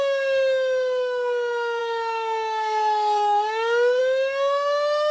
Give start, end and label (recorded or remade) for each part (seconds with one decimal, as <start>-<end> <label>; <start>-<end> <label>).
0.0-5.1 remade